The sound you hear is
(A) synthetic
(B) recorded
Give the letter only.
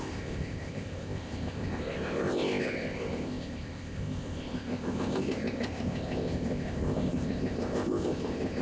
A